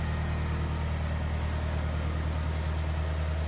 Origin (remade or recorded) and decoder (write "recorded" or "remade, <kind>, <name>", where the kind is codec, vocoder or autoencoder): recorded